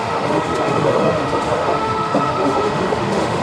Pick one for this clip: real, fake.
fake